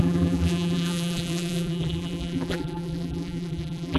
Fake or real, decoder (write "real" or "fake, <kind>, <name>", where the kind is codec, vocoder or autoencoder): fake, vocoder, BigVGAN v2